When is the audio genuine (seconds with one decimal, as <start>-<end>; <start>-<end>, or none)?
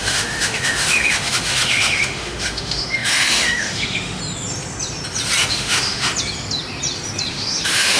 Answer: 4.2-5.5; 6.1-7.3